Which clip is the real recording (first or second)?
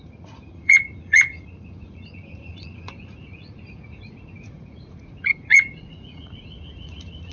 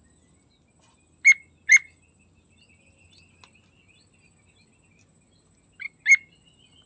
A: second